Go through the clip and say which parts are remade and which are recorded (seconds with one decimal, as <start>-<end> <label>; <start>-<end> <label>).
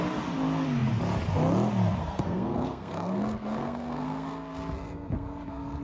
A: 0.0-2.0 recorded; 2.0-5.8 remade